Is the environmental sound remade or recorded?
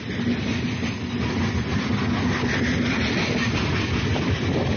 recorded